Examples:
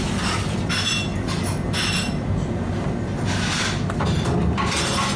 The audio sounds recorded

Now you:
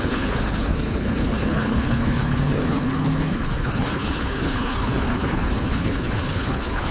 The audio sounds remade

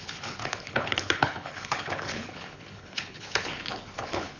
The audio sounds remade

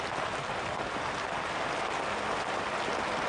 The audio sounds recorded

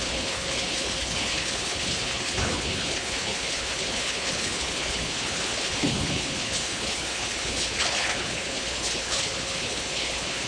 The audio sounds remade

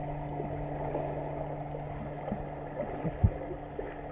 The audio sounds recorded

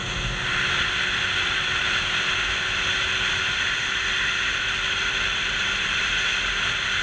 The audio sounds recorded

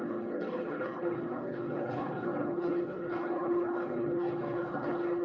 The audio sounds remade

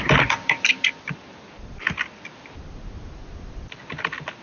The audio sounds recorded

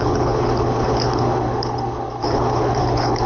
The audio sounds remade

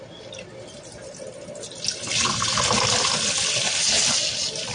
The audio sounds recorded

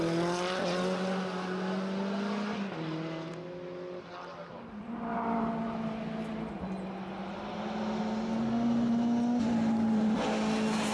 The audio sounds recorded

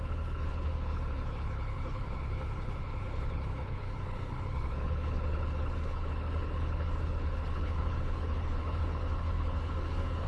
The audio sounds remade